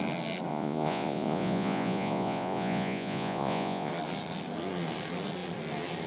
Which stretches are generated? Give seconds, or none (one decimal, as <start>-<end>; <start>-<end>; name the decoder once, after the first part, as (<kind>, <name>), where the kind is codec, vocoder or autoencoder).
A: 0.5-3.9 (vocoder, Vocos)